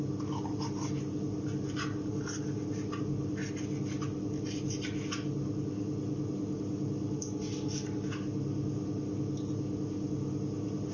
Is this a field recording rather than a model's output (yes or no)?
yes